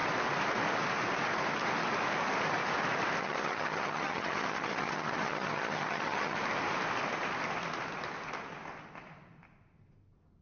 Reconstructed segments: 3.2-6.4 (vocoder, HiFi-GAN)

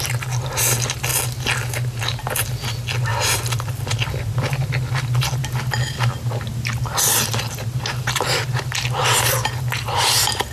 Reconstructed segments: 3.1-3.7 (vocoder, BigVGAN v2)

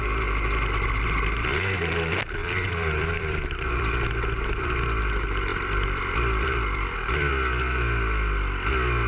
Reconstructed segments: 2.4-5.0 (vocoder, BigVGAN v2); 5.5-7.3

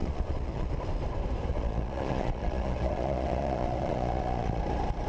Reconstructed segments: 0.0-0.7 (vocoder, Vocos); 1.5-4.6

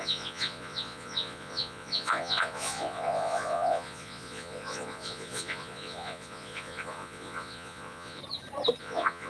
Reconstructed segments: 0.0-8.2 (vocoder, Vocos); 8.8-9.3

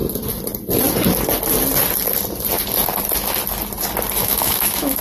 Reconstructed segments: 4.2-5.0 (autoencoder, DAC-VAE)

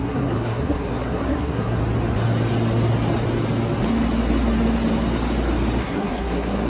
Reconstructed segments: 0.0-1.8 (codec, SNAC); 5.8-6.7

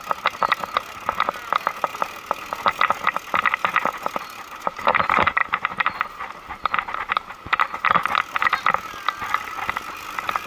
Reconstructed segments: none